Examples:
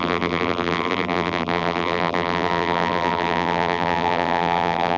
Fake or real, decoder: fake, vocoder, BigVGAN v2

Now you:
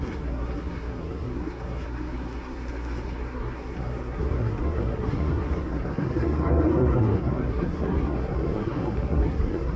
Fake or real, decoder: fake, codec, SNAC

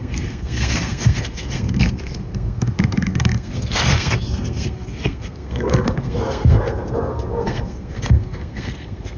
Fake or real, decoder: fake, codec, SNAC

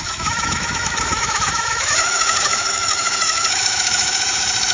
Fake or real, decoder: fake, autoencoder, DAC-VAE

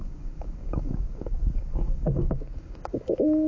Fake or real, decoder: fake, codec, DAC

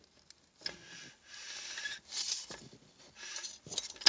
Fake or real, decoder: real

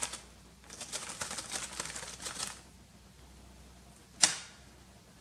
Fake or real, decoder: real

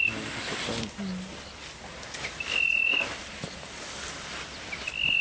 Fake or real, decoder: real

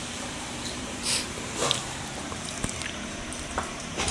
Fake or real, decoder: fake, vocoder, BigVGAN v2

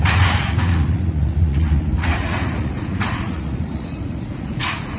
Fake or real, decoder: fake, vocoder, Vocos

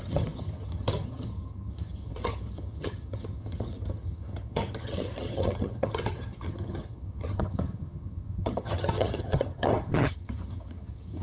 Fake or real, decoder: fake, vocoder, HiFi-GAN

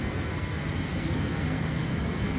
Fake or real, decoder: fake, codec, SNAC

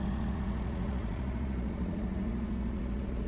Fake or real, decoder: fake, vocoder, Vocos